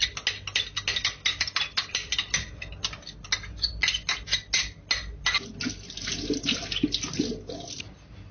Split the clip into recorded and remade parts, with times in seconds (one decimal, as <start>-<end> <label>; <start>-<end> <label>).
0.0-8.3 recorded